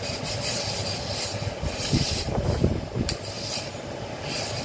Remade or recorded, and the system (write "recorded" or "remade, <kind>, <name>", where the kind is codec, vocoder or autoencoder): recorded